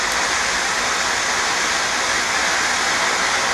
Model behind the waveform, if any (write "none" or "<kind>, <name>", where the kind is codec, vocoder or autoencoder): none